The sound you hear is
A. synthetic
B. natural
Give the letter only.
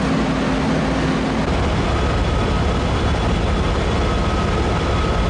B